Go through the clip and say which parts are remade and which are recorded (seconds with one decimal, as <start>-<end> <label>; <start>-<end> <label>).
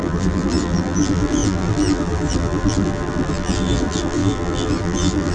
0.0-5.3 remade